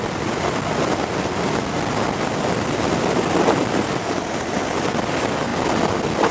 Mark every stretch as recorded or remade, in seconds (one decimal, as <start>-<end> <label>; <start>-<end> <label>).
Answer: 0.0-6.3 recorded